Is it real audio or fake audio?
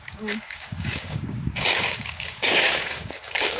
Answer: fake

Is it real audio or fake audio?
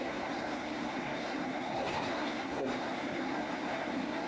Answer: fake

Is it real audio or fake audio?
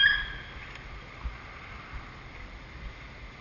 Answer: real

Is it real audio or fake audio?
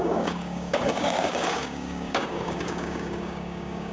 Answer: fake